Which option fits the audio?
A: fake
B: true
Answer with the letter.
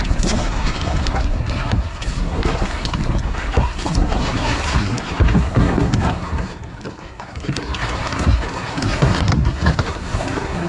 A